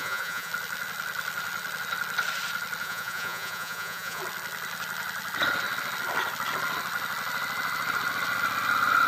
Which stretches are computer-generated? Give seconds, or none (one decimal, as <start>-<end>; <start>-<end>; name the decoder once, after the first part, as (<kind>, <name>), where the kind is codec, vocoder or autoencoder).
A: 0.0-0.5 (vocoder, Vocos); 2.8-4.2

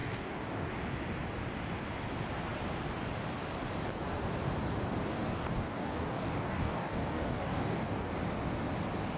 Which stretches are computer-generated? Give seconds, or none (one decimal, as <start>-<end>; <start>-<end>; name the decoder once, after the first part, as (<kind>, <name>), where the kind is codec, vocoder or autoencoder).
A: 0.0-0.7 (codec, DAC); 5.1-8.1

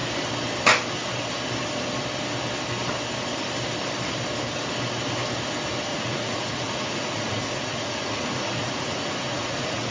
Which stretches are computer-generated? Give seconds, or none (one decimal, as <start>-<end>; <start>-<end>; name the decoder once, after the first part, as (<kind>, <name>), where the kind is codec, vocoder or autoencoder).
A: 5.9-9.9 (vocoder, Vocos)

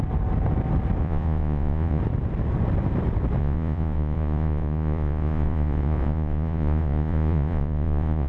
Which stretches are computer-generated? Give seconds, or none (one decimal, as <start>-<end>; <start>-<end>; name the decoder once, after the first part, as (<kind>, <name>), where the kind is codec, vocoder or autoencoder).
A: 1.0-2.0 (vocoder, Vocos); 3.4-8.3